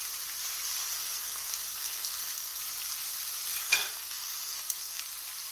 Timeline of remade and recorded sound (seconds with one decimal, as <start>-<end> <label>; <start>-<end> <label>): 0.0-0.8 recorded; 0.8-2.6 remade; 2.6-3.6 recorded; 3.6-5.0 remade; 5.0-5.5 recorded